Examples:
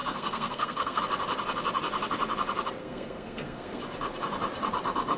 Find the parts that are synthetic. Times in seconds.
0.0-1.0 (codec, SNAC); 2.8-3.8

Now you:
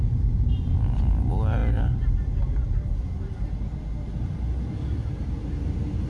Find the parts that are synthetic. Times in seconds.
none

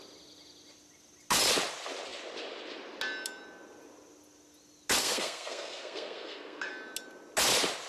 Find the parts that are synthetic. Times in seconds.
5.0-6.7 (codec, SNAC)